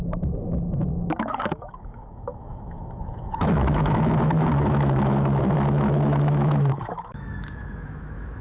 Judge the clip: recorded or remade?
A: remade